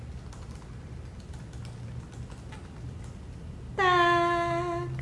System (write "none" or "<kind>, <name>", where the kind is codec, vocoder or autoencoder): none